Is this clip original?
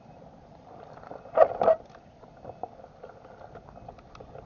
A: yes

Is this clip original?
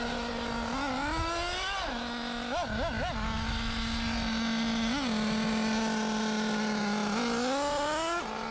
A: yes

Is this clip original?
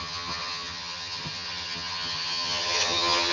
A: no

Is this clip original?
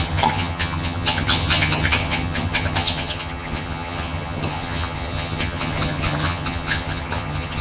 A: no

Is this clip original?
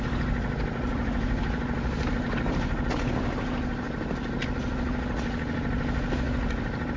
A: yes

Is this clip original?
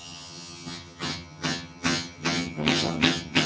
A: no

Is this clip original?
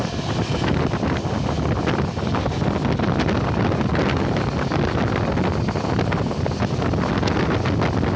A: yes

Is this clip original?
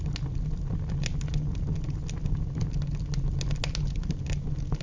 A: yes